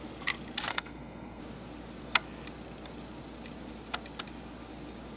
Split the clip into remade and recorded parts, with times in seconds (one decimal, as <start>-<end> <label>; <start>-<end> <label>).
0.0-0.7 recorded; 0.7-1.4 remade; 1.4-5.2 recorded